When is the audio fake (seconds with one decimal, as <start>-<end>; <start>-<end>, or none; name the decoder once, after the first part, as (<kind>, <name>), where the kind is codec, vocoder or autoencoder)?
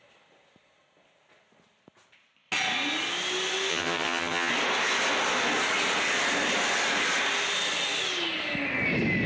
3.7-4.5 (vocoder, HiFi-GAN)